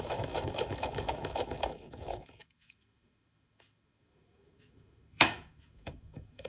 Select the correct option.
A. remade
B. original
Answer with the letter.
A